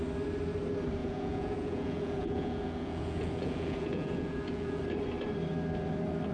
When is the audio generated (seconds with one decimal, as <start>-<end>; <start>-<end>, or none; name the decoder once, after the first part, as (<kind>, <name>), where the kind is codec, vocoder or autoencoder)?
1.0-4.8 (vocoder, Vocos)